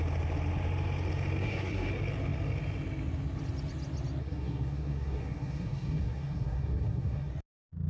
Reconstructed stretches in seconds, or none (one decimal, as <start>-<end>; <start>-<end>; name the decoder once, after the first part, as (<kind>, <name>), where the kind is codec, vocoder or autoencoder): 1.4-1.9 (codec, SNAC); 4.2-7.3